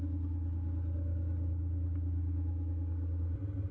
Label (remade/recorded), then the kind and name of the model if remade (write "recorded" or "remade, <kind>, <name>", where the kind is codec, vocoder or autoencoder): recorded